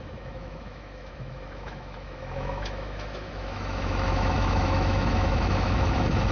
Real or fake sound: fake